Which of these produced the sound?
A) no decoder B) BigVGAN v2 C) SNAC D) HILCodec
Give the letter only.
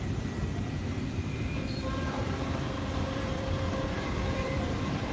B